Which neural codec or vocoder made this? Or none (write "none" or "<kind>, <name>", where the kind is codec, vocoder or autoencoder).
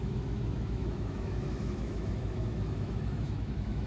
autoencoder, DAC-VAE